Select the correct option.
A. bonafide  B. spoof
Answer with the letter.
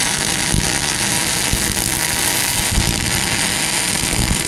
A